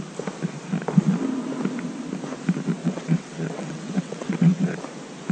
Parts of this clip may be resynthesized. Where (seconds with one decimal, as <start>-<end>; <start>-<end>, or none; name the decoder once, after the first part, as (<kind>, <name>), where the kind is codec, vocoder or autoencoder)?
2.8-4.8 (vocoder, WaveNeXt)